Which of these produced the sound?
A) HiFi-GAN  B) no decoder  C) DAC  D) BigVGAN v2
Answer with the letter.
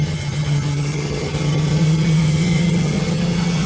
A